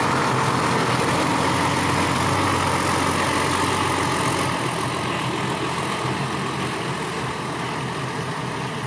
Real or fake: real